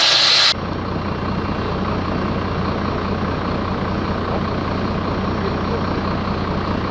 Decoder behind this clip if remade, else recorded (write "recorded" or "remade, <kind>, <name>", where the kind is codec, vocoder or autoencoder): recorded